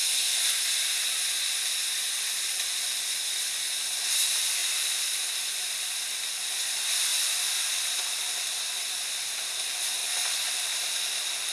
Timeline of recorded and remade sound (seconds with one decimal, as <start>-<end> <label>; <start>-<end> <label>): 0.0-2.9 recorded; 2.9-7.1 remade; 7.1-8.7 recorded; 8.7-11.5 remade